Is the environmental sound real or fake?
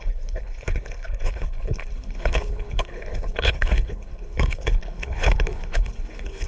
fake